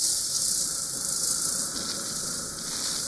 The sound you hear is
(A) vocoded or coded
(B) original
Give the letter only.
B